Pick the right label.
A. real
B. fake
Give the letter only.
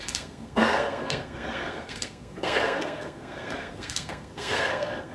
B